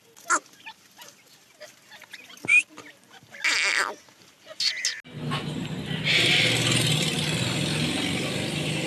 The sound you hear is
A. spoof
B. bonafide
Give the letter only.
B